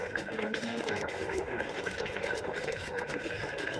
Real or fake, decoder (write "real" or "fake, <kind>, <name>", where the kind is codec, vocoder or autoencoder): fake, autoencoder, DAC-VAE